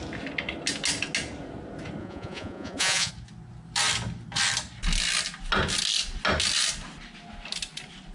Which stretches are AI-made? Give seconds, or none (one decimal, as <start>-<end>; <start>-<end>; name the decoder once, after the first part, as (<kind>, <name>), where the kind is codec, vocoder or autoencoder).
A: 2.0-3.1 (vocoder, Vocos)